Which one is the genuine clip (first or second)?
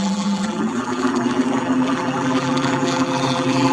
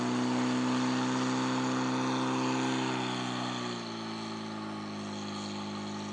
second